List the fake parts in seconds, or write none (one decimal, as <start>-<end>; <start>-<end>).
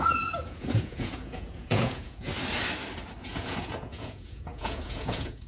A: 0.0-2.3; 3.2-5.5